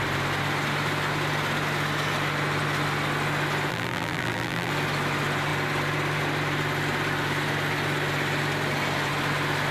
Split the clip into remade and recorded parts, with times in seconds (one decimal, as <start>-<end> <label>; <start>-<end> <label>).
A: 0.0-3.7 recorded; 3.7-4.7 remade; 4.7-9.7 recorded